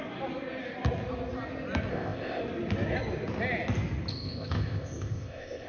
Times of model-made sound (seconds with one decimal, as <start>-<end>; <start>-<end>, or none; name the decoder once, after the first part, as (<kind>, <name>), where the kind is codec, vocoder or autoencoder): 1.9-2.4 (codec, ZipCodec); 4.1-5.7